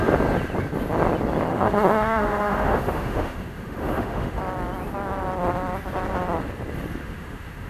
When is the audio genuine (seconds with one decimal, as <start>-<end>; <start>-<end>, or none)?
0.0-1.5; 4.4-7.0